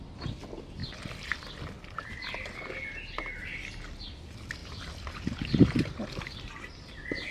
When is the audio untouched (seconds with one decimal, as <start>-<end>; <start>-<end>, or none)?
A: 0.0-0.8; 1.4-4.6; 5.9-7.3